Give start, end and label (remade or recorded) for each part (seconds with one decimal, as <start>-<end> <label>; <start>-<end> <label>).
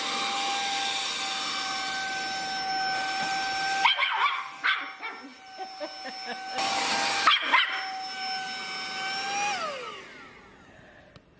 0.0-11.4 recorded